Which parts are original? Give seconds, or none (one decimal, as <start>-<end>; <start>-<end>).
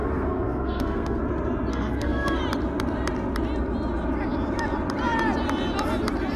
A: 1.2-1.7; 2.4-6.4